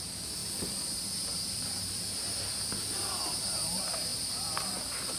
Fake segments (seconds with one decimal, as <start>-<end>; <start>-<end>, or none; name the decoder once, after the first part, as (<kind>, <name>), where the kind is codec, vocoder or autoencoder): 0.4-2.0 (vocoder, BigVGAN v2)